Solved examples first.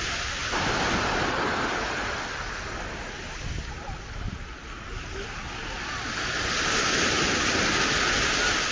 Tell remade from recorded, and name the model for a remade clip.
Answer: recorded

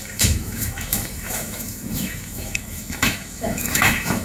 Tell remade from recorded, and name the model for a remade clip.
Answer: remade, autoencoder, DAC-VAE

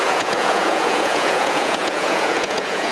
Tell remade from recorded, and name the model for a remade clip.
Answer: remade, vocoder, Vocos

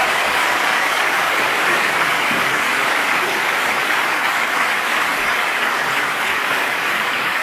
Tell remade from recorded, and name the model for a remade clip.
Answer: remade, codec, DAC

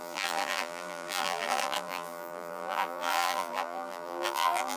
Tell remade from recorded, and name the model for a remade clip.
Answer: remade, vocoder, BigVGAN v2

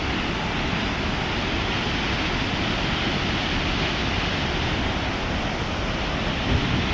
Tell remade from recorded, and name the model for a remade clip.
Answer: recorded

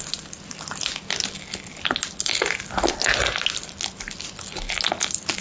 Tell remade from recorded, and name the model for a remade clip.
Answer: recorded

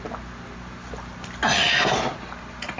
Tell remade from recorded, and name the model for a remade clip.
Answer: recorded